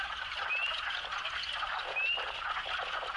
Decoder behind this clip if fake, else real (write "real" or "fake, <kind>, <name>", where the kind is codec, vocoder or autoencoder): real